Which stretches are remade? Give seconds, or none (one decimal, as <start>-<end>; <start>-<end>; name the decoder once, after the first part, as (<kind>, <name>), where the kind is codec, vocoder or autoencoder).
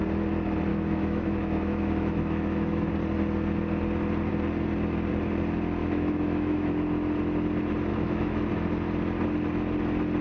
0.7-2.9 (autoencoder, DAC-VAE); 5.8-6.7; 7.9-8.5